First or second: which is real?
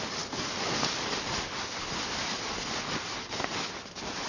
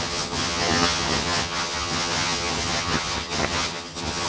first